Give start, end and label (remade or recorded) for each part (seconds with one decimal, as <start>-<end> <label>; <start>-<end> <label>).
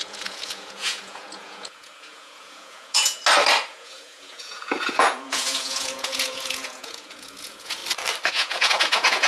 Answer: 0.0-3.2 remade; 3.2-3.7 recorded; 3.7-7.8 remade; 7.8-8.3 recorded; 8.3-9.3 remade